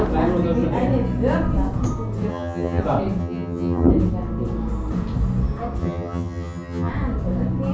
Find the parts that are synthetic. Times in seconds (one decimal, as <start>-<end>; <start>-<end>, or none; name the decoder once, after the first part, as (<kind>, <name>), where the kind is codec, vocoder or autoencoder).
2.3-2.8 (vocoder, HiFi-GAN); 3.2-3.9; 5.8-6.9